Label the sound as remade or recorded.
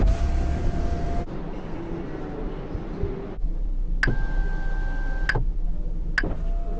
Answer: recorded